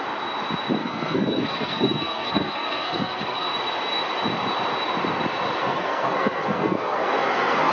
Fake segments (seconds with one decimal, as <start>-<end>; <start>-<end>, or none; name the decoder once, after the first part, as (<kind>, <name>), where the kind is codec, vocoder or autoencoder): 0.8-3.5 (codec, SNAC); 5.6-7.7